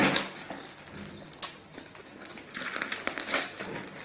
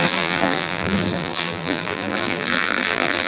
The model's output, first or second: second